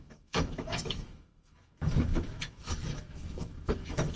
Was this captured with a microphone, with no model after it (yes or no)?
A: no